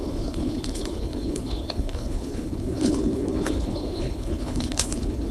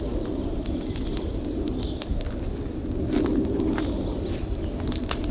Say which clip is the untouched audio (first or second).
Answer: second